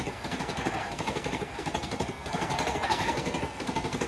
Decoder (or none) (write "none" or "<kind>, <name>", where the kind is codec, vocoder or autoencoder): codec, SNAC